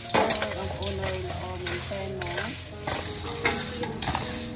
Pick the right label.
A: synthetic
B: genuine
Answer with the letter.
B